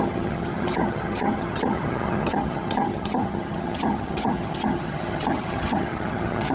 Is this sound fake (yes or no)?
yes